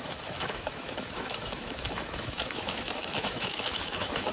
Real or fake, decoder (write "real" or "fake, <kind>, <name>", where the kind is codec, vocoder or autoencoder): fake, autoencoder, DAC-VAE